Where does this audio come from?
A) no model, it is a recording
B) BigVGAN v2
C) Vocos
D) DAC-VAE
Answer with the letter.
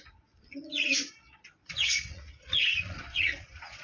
C